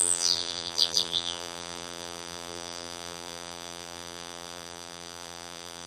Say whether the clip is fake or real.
fake